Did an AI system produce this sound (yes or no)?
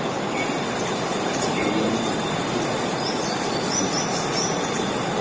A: no